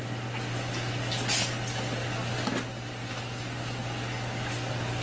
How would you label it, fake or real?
real